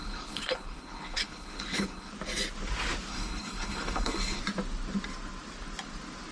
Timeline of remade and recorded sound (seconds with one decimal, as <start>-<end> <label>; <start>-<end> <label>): 0.0-2.1 remade; 2.1-3.1 recorded; 3.1-4.4 remade; 4.4-6.3 recorded